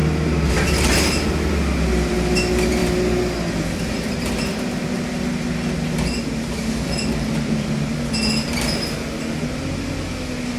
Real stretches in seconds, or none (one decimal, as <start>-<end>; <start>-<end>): 0.0-10.6